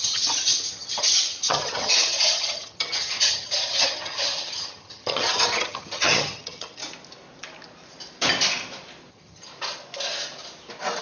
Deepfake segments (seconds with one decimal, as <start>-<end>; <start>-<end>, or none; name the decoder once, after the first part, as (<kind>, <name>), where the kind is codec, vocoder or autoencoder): 0.0-6.8 (vocoder, HiFi-GAN); 9.1-9.5